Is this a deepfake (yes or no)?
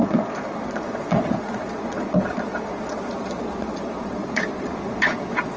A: yes